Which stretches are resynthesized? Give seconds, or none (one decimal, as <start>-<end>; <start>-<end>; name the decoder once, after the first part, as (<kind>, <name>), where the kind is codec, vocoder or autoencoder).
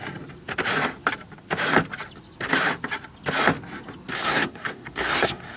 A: 4.1-5.6 (codec, SNAC)